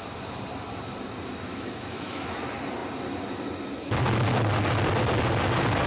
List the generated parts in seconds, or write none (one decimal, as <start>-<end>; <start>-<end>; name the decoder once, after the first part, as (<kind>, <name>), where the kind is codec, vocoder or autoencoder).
1.5-2.4 (autoencoder, DAC-VAE)